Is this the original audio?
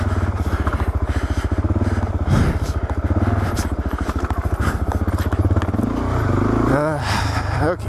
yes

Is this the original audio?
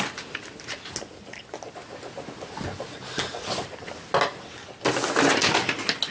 yes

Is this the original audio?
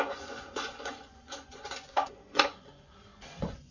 no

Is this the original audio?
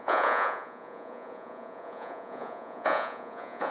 no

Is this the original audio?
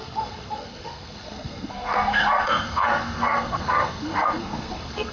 no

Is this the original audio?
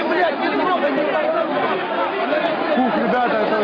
yes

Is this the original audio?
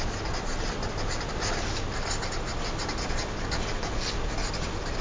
yes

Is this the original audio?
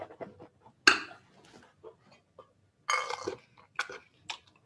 yes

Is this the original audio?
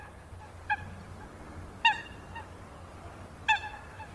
yes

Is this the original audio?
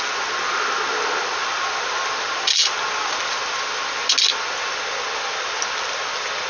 yes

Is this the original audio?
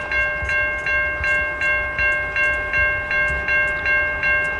yes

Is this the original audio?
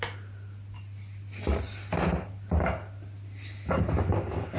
yes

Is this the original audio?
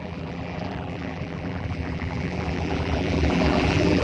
no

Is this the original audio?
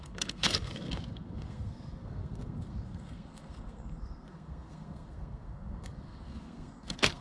no